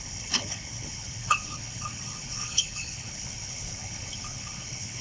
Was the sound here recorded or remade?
remade